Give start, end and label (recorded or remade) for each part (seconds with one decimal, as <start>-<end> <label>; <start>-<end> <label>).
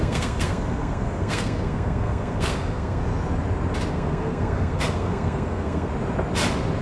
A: 0.0-3.0 remade; 3.0-3.9 recorded; 3.9-5.9 remade; 5.9-6.8 recorded